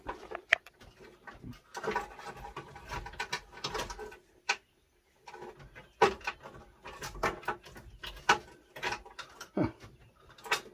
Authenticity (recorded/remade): recorded